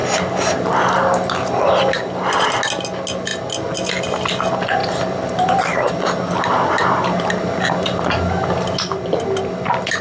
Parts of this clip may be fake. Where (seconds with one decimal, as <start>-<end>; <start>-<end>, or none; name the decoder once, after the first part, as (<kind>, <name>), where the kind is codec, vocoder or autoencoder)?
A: 4.8-5.6 (vocoder, BigVGAN v2)